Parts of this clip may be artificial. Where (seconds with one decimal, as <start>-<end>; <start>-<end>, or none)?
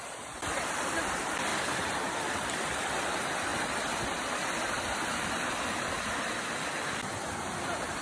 none